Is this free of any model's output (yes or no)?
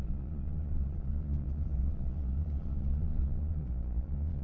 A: no